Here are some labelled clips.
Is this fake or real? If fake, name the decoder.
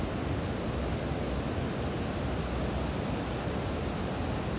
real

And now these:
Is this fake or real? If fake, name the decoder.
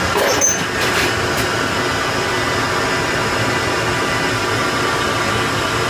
real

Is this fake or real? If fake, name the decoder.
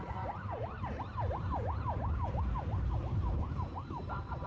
real